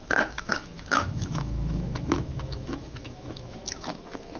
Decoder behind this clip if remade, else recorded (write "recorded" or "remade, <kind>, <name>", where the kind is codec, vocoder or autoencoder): remade, autoencoder, DAC-VAE